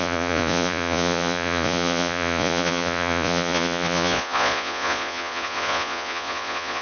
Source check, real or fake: fake